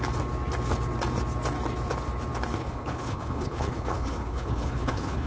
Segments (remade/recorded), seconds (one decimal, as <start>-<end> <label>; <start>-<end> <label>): 0.0-2.6 recorded; 2.6-5.3 remade